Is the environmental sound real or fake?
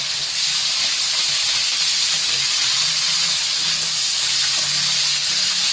real